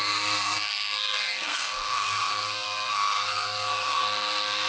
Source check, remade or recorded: remade